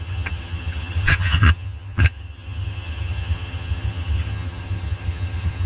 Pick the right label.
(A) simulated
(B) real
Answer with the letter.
A